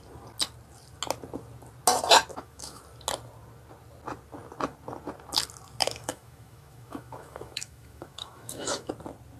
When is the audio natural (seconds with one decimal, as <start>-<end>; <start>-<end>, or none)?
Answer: 0.0-2.3; 2.8-5.8; 8.9-9.4